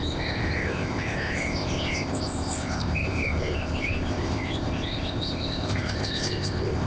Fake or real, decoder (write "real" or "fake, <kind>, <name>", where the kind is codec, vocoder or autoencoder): fake, codec, ZipCodec